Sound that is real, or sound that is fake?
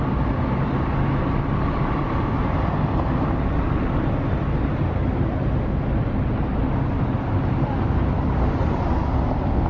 real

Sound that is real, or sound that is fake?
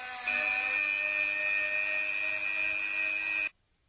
real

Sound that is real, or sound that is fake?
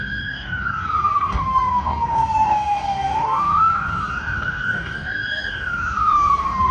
fake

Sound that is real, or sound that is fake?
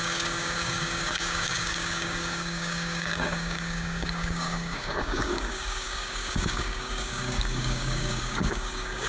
fake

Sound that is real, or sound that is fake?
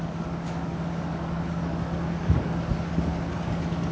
fake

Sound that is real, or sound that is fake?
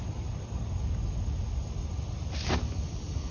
real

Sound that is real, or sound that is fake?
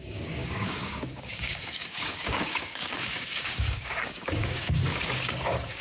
fake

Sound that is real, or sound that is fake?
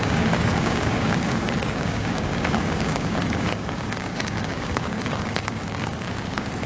fake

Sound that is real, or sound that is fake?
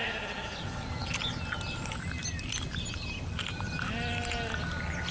real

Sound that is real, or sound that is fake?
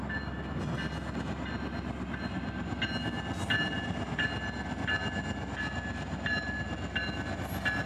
real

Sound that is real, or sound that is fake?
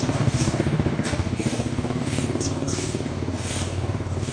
fake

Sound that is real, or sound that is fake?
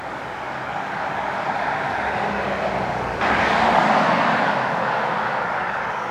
fake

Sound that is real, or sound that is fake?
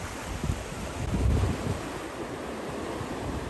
real